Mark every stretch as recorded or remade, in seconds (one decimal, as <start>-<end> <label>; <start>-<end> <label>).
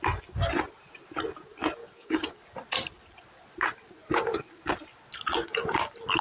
0.0-1.8 recorded; 1.8-2.4 remade; 2.4-6.2 recorded